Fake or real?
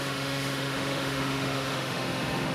fake